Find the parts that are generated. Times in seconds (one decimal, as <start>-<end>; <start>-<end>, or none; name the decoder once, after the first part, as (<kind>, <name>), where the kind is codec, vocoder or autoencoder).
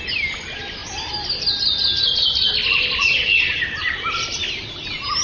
none